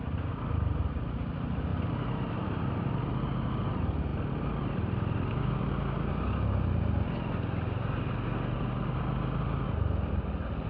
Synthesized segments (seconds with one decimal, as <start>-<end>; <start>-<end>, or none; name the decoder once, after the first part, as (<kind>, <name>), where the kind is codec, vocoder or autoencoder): 1.7-2.6 (vocoder, BigVGAN v2); 4.1-5.8